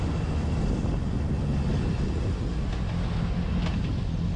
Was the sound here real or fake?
real